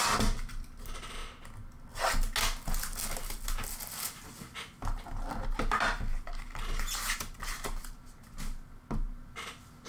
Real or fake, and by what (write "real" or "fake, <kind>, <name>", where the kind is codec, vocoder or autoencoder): real